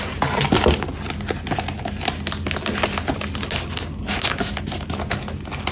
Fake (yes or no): no